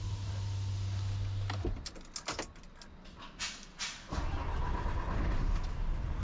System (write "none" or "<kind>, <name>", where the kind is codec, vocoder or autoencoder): none